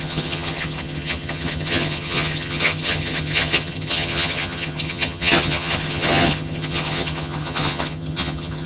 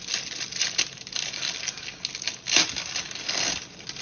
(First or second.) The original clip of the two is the second